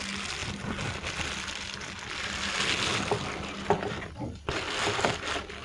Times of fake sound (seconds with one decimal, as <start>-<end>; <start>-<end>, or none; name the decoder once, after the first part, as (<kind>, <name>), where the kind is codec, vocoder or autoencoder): none